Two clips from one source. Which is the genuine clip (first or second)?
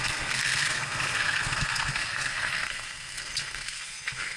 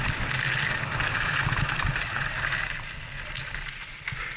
second